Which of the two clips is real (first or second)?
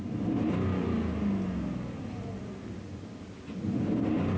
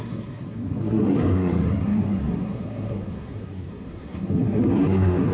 first